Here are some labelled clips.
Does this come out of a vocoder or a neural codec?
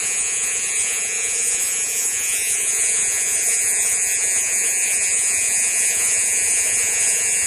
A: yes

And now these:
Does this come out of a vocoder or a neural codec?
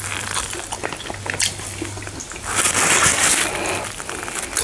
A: no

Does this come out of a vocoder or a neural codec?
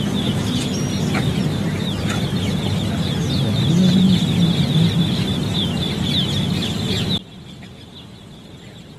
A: no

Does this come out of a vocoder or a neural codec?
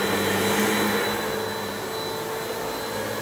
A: no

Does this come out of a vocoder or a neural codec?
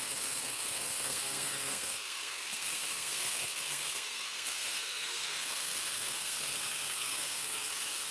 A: yes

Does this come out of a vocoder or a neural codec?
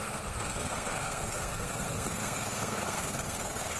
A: yes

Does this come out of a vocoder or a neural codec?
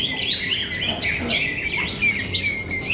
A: no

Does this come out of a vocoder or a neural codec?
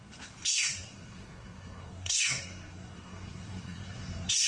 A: yes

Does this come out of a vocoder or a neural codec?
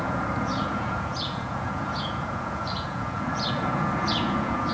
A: yes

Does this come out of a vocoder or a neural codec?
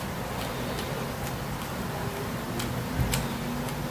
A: no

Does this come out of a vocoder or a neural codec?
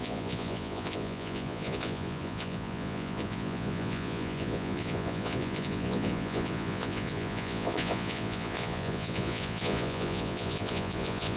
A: yes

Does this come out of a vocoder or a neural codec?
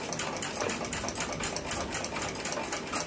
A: no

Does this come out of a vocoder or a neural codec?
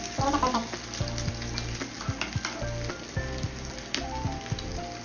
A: no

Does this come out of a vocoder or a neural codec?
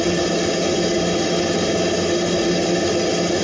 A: no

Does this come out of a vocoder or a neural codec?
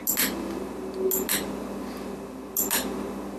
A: no